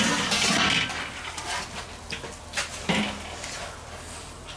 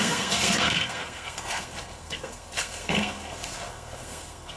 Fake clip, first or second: second